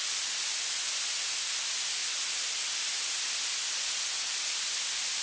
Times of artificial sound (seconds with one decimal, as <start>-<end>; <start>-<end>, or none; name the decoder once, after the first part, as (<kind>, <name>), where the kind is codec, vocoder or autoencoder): none

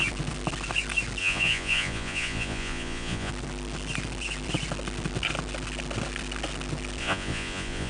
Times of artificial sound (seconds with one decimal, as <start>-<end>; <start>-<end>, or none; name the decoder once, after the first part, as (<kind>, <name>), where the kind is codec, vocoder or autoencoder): 1.2-3.3 (vocoder, Vocos); 7.0-7.9

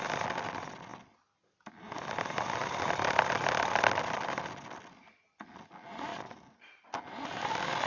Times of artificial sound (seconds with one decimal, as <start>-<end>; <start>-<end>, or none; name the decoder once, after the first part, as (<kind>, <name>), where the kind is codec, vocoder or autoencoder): none

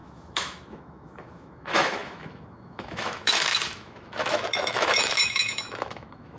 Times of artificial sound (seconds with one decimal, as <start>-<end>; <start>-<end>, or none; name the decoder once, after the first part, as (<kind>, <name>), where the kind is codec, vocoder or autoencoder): 0.0-6.4 (autoencoder, DAC-VAE)

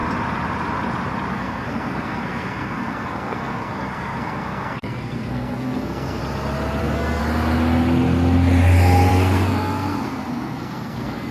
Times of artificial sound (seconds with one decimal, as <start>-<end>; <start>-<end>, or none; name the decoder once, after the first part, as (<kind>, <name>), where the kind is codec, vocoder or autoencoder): 1.3-6.2 (codec, SNAC); 6.8-7.2; 9.1-11.3

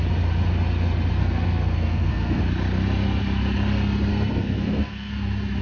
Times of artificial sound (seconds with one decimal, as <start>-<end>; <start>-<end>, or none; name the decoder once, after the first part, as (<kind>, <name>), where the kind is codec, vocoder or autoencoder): 1.2-2.4 (codec, SNAC); 4.1-5.1

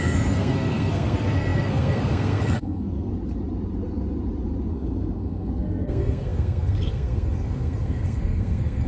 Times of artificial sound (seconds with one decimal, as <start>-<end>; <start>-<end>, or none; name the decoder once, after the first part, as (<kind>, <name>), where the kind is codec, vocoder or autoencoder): 0.0-3.1 (codec, SNAC); 4.7-8.9

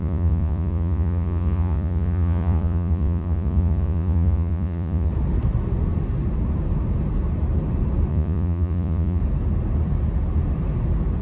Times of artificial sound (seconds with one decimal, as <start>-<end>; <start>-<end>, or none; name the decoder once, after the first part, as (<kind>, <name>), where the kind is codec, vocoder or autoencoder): 0.0-5.1 (vocoder, Vocos); 8.1-9.2